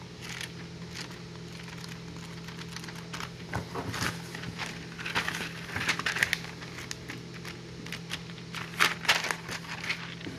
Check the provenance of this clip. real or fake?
real